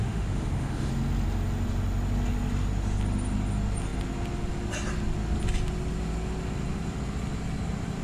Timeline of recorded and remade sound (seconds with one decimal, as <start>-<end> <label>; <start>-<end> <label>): 0.0-0.9 remade; 0.9-8.0 recorded